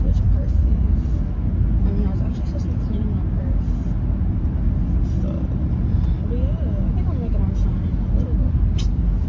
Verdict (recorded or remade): recorded